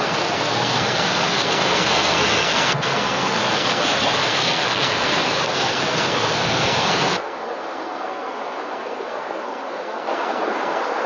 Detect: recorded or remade remade